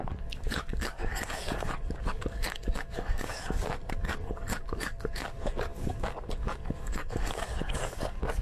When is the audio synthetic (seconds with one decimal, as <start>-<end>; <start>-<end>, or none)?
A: 0.0-8.4